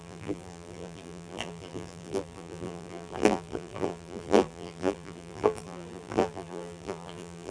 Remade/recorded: remade